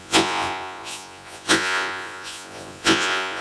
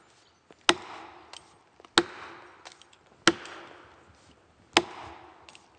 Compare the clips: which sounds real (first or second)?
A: second